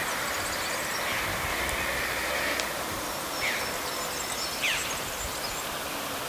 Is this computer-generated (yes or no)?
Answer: no